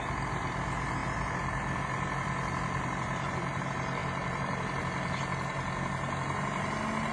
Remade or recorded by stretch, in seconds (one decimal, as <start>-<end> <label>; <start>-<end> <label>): 0.0-1.0 recorded; 1.0-3.6 remade; 3.6-4.0 recorded; 4.0-4.6 remade; 4.6-7.1 recorded